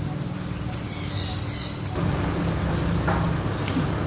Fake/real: real